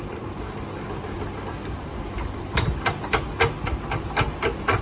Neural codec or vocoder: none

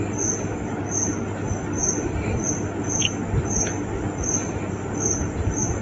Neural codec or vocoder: none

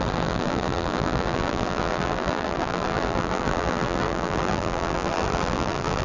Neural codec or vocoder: vocoder, BigVGAN v2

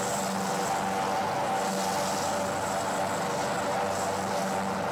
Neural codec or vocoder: none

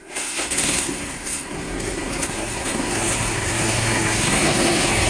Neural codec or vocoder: codec, SNAC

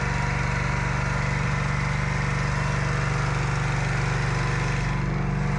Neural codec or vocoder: none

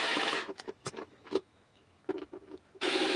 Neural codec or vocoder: autoencoder, DAC-VAE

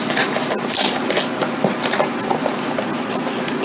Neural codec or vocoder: none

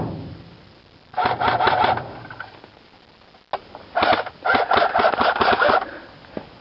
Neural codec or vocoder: none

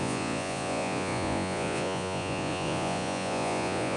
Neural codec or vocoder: vocoder, Vocos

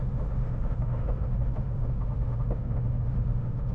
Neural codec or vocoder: autoencoder, DAC-VAE